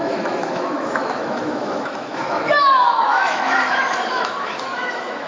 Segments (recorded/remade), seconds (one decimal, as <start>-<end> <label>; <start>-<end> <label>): 0.0-5.3 remade